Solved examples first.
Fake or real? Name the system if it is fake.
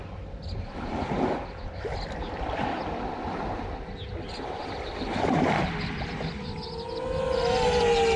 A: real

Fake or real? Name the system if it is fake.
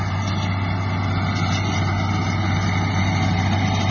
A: real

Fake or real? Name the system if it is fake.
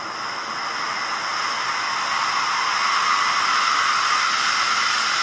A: real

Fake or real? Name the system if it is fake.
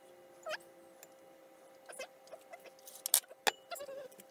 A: real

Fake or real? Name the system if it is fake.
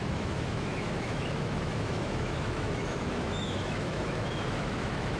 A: fake, autoencoder, DAC-VAE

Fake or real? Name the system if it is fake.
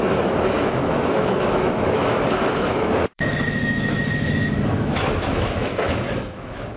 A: fake, autoencoder, DAC-VAE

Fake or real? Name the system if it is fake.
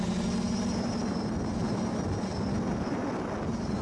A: real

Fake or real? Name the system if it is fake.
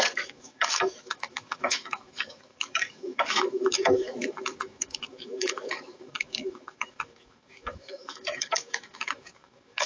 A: fake, autoencoder, DAC-VAE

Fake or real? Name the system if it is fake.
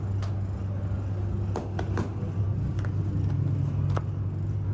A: real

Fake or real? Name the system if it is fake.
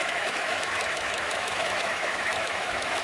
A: fake, autoencoder, DAC-VAE